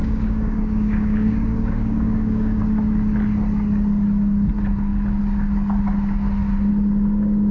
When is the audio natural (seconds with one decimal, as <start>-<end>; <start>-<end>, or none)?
2.6-7.5

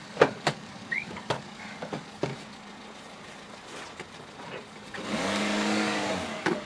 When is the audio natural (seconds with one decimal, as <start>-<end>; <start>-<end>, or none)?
2.3-4.8

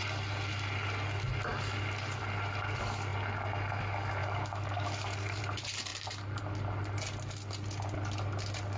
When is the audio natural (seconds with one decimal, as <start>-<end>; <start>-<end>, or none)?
0.0-4.2; 5.4-8.8